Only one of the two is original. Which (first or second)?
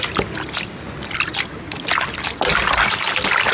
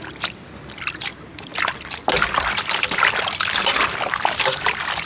first